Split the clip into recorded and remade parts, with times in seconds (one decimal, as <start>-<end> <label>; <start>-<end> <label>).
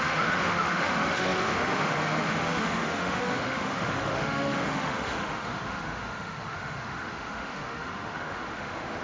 0.0-9.0 remade